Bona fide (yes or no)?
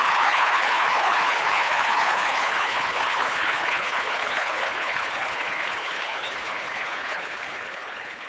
no